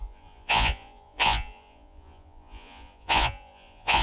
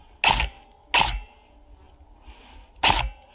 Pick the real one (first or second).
second